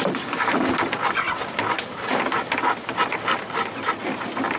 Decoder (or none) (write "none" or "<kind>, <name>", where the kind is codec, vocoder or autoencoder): none